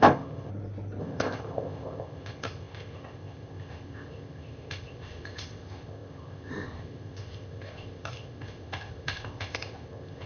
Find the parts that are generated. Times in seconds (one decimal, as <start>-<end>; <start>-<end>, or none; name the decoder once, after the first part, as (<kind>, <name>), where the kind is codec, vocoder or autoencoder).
0.0-0.5 (codec, ZipCodec); 1.0-10.3